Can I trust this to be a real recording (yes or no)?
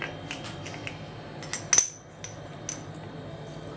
yes